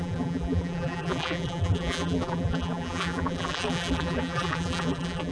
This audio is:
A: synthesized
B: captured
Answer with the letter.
A